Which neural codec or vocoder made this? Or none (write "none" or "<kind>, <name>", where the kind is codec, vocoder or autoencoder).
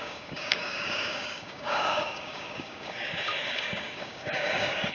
codec, DAC